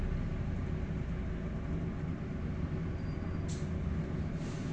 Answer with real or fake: real